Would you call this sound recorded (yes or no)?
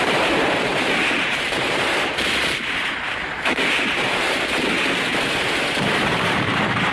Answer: no